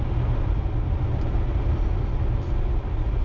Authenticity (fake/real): real